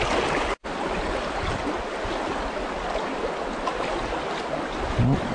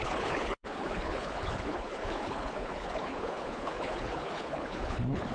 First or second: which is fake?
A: second